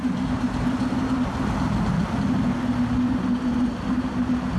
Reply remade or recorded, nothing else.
recorded